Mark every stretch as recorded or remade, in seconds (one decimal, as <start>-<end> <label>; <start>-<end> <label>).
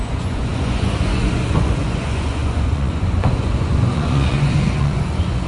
0.0-5.5 remade